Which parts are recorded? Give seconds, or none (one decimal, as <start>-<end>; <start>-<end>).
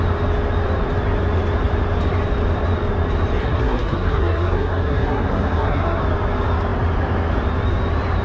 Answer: 0.0-3.4; 6.0-8.2